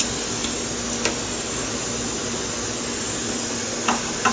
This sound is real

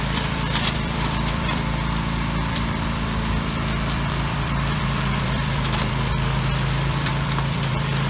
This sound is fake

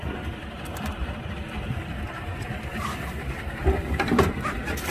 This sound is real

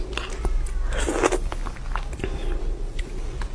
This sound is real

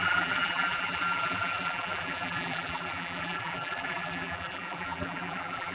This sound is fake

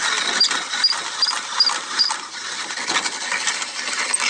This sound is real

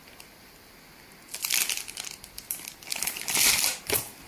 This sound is real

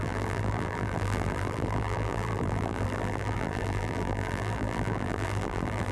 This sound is fake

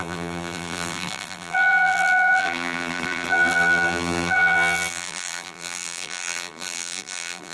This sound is fake